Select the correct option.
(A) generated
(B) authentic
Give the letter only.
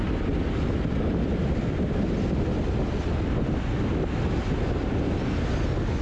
B